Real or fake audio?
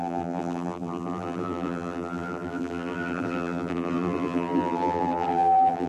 fake